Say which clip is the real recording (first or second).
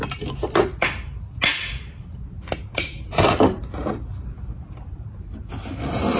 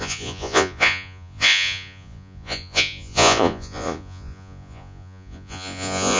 first